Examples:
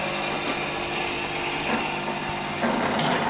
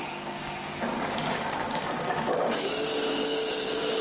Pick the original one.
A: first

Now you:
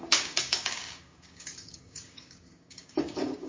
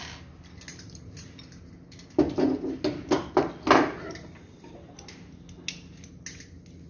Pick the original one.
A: second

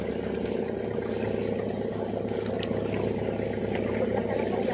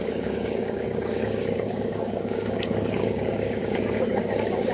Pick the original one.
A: first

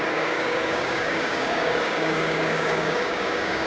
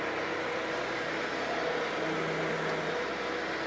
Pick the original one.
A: second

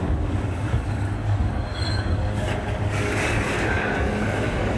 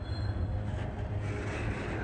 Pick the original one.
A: second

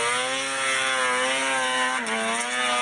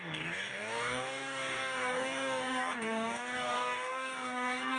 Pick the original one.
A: first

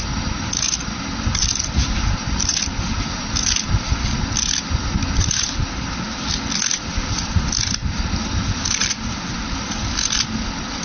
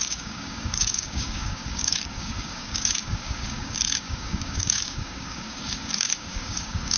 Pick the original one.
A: first